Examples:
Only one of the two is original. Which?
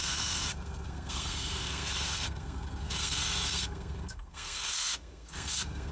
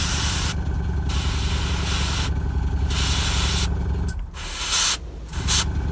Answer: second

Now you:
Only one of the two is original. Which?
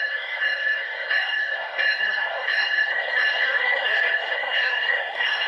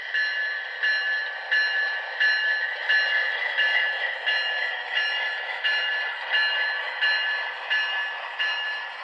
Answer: second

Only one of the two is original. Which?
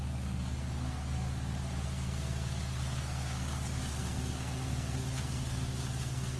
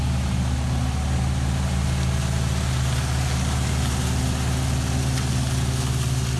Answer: second